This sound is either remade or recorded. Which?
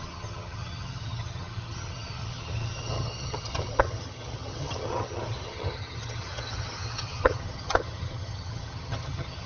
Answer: remade